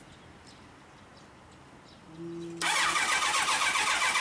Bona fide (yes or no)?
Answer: yes